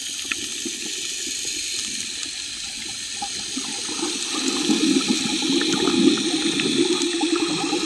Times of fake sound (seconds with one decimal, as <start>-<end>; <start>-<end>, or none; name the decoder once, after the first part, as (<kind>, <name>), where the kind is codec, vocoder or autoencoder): none